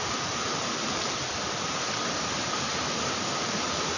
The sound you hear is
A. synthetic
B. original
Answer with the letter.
B